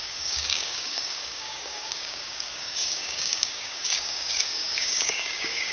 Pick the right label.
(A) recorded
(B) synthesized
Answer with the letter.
B